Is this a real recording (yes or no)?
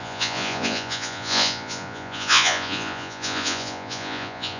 no